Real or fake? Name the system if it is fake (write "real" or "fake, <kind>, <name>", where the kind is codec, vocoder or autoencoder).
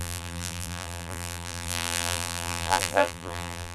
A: fake, vocoder, BigVGAN v2